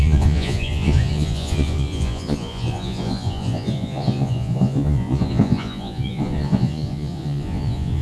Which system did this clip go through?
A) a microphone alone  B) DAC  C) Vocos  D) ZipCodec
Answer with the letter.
C